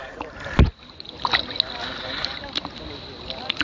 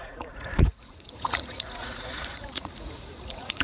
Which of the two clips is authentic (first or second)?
first